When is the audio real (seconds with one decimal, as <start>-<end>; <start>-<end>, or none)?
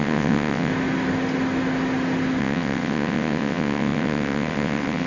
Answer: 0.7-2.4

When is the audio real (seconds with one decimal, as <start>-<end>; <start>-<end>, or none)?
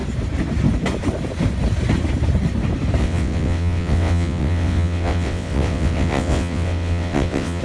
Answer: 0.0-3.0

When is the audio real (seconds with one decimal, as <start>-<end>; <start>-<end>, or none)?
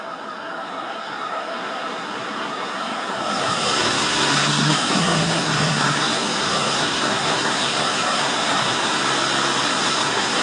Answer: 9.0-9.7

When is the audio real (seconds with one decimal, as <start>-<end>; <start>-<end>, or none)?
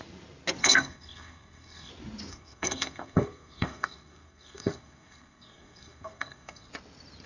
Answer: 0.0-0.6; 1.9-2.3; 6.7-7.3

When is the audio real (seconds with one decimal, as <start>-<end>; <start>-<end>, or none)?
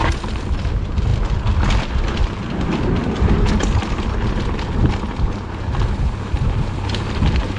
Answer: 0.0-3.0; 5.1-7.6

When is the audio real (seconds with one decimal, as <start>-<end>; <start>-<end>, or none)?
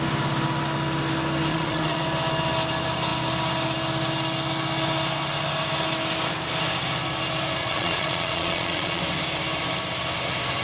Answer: 0.0-1.5; 2.0-7.6; 9.0-10.6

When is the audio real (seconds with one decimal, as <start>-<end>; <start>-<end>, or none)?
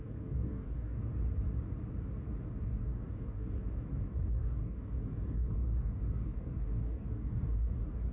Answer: 1.1-2.6; 3.6-4.1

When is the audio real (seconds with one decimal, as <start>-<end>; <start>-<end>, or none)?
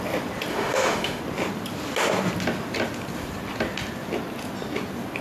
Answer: 0.0-0.5; 1.2-5.2